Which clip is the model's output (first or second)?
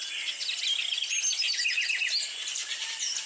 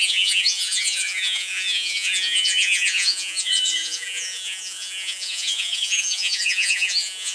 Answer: second